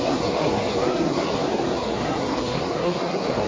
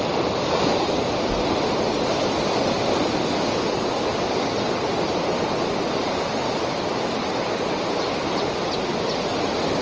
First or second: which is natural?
second